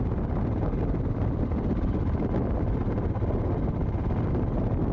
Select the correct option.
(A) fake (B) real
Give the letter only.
B